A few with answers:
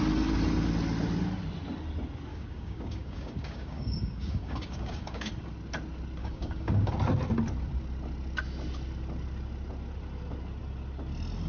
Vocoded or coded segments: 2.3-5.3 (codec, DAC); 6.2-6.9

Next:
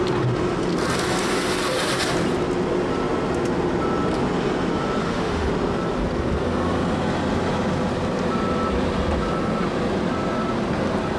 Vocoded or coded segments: 5.0-5.5 (autoencoder, DAC-VAE)